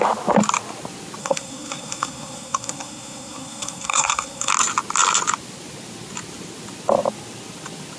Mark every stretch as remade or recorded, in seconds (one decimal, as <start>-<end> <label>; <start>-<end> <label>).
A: 0.0-1.2 recorded; 1.2-4.5 remade; 4.5-8.0 recorded